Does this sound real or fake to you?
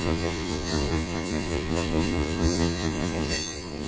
fake